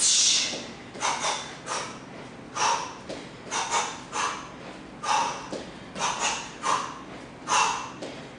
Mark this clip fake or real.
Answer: real